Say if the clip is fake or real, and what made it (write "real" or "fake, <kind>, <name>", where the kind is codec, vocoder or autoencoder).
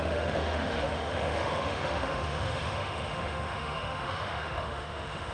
fake, autoencoder, DAC-VAE